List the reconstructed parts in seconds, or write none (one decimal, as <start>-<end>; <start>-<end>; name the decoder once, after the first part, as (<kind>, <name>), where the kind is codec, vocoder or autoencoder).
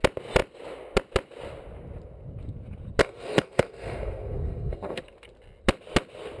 3.0-5.0 (codec, SNAC)